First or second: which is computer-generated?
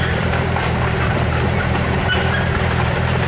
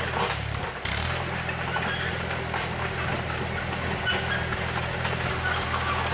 first